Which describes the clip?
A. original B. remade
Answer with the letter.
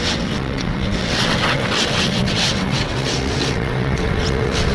B